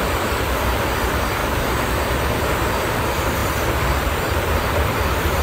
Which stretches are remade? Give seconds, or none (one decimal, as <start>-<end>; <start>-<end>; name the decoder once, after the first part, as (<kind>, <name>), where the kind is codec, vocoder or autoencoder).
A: 0.0-5.4 (vocoder, BigVGAN v2)